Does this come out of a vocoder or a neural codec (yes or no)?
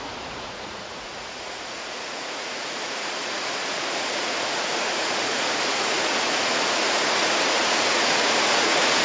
yes